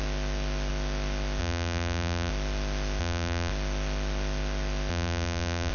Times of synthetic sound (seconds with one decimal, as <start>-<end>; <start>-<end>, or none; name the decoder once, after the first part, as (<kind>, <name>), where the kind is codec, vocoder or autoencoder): 1.4-2.3 (vocoder, BigVGAN v2); 3.0-3.5; 4.9-5.7